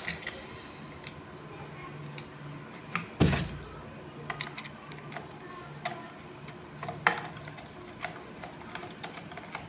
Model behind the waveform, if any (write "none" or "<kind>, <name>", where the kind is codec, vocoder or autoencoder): none